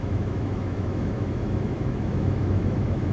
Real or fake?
fake